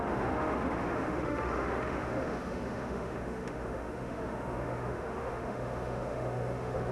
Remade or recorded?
remade